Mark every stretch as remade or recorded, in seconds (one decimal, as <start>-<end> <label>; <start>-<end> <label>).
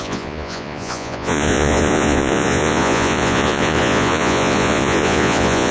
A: 0.0-5.7 remade